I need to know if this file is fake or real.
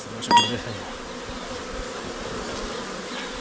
real